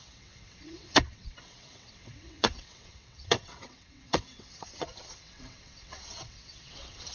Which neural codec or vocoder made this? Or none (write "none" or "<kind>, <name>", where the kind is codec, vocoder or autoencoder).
vocoder, WaveNeXt